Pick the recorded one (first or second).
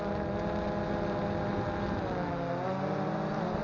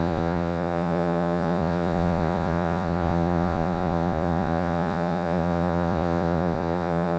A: first